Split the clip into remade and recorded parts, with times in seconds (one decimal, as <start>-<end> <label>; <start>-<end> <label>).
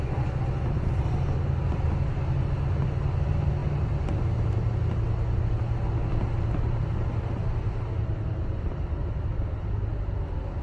0.0-10.6 recorded